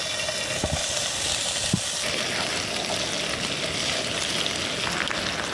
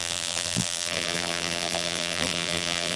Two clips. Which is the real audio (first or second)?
first